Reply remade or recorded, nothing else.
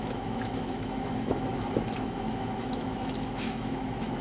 remade